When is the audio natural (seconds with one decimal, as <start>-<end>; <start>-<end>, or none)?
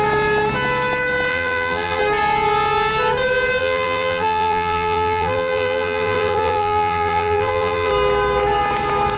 0.0-1.3; 2.0-3.6; 7.9-9.2